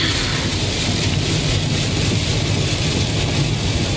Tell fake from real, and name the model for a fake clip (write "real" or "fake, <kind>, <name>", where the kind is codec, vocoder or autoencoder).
real